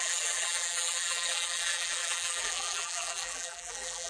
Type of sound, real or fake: fake